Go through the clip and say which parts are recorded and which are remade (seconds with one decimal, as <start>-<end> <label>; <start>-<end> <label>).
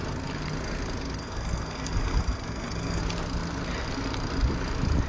0.0-1.2 recorded; 1.2-3.0 remade; 3.0-5.1 recorded